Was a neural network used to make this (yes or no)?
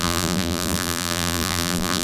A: yes